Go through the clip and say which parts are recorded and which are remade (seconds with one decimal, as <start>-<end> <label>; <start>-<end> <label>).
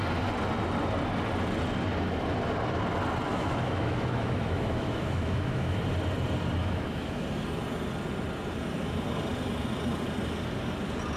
0.0-3.3 recorded; 3.3-5.8 remade; 5.8-6.6 recorded; 6.6-7.2 remade; 7.2-11.2 recorded